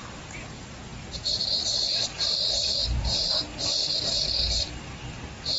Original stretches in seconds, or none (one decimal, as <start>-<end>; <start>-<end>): 0.0-5.6